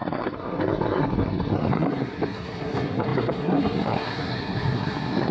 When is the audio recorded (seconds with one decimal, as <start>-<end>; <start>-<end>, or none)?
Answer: none